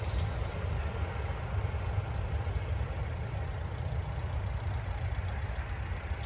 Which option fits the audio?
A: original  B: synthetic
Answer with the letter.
A